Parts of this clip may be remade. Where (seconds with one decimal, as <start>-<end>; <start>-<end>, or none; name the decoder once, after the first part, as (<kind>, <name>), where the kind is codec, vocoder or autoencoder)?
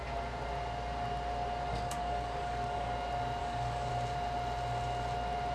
1.7-2.9 (codec, DAC); 3.4-3.9